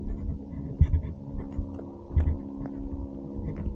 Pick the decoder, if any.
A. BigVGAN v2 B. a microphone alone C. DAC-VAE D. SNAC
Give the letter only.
B